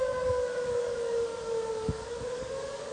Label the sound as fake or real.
fake